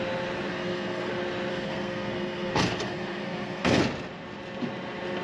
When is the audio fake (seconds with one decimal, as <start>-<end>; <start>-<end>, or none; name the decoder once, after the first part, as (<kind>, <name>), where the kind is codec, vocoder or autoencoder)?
0.5-1.1 (codec, SNAC); 1.5-3.8